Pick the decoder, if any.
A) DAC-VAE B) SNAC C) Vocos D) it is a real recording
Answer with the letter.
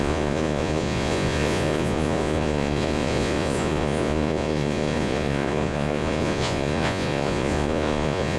C